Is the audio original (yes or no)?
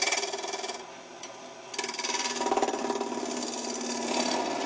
yes